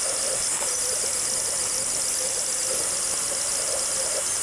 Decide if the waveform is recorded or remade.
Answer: recorded